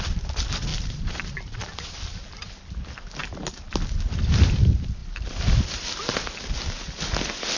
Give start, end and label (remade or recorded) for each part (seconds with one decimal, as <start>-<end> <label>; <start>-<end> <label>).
0.0-0.7 recorded; 0.7-2.6 remade; 2.6-7.6 recorded